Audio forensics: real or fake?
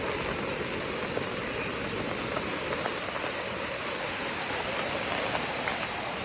real